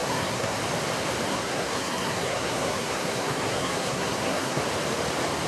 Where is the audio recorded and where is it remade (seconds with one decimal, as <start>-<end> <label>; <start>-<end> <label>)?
0.0-0.6 remade; 0.6-1.3 recorded; 1.3-4.6 remade; 4.6-5.5 recorded

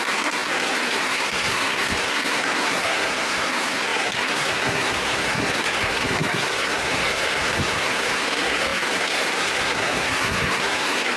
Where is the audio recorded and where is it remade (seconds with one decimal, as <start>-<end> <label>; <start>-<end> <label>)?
0.0-11.2 remade

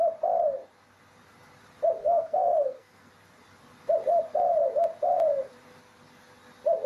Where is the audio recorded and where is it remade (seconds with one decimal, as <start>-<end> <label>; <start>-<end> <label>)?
0.0-2.0 recorded; 2.0-3.1 remade; 3.1-6.9 recorded

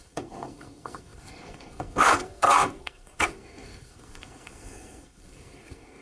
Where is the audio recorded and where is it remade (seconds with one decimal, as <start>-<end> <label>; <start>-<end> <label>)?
0.0-6.0 remade

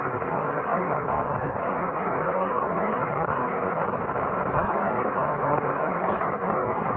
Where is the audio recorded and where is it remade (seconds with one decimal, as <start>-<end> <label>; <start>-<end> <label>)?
0.0-4.0 remade; 4.0-4.5 recorded; 4.5-7.0 remade